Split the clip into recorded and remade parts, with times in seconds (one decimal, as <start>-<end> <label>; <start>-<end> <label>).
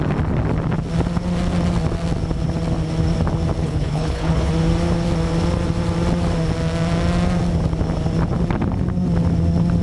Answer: 0.0-3.6 recorded; 3.6-4.5 remade; 4.5-9.8 recorded